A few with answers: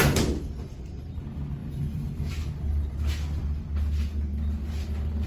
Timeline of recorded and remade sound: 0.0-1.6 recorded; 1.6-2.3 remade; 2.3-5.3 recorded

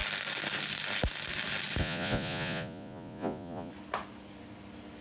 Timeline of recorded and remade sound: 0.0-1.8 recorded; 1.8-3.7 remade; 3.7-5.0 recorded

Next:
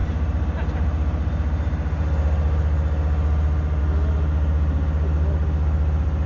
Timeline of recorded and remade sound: 0.0-6.3 recorded

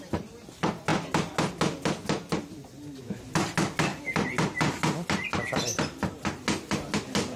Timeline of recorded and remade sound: 0.0-7.4 recorded

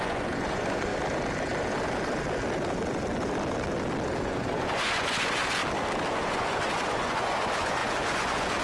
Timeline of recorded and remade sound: 0.0-0.9 remade; 0.9-4.2 recorded; 4.2-5.6 remade; 5.6-6.1 recorded; 6.1-8.6 remade